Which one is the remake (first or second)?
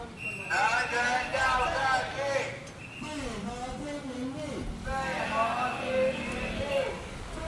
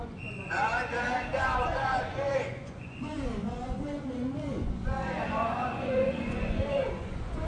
second